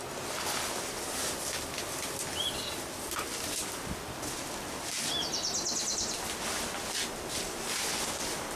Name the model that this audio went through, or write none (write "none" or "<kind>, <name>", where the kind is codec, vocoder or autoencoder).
none